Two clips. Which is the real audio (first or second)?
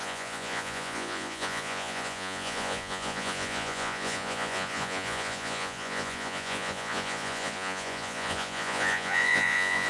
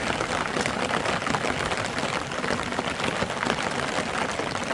second